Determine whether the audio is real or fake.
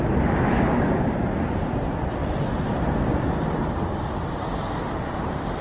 real